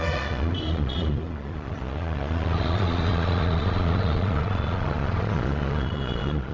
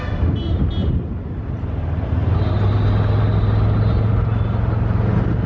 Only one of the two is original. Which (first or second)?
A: second